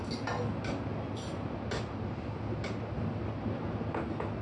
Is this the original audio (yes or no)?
yes